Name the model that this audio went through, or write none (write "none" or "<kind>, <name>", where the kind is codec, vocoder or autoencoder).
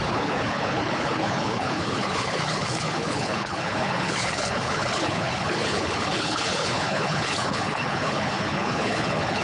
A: codec, HILCodec